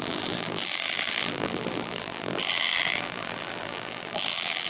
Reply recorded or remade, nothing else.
remade